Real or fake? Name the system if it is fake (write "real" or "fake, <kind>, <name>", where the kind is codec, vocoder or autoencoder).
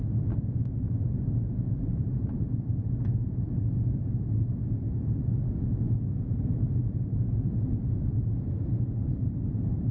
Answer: real